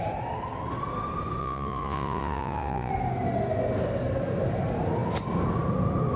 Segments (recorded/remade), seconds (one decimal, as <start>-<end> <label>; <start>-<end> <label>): 0.0-1.4 recorded; 1.4-2.9 remade; 2.9-6.2 recorded